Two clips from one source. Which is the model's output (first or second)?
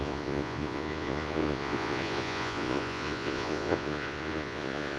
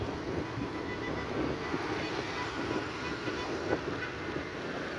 first